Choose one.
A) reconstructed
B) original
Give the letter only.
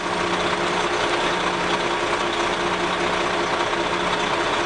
B